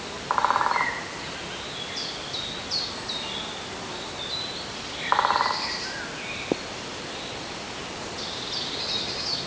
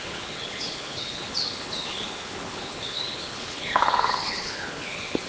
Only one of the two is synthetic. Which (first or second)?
second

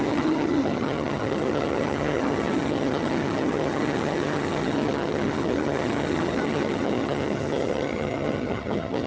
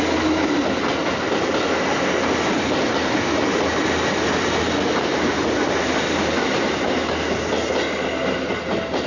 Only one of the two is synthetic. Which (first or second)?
first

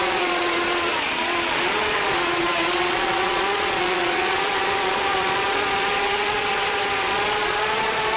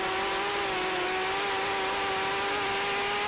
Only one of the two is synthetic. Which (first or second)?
first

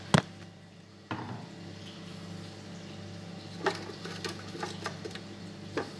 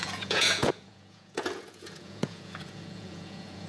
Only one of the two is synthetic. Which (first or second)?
second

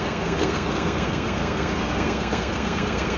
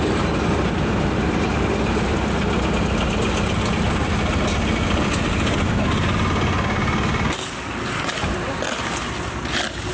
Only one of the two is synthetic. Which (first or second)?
first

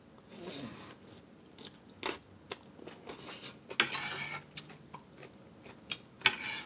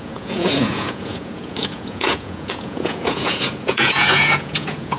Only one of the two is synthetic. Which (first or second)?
second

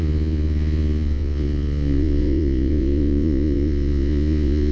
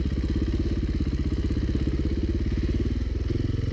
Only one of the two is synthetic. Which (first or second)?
first